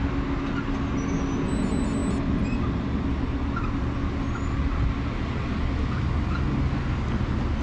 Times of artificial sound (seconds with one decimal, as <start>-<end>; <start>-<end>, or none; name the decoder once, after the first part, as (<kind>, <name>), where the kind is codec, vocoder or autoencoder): none